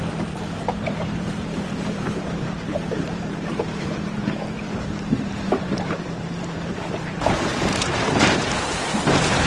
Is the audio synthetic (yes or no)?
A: yes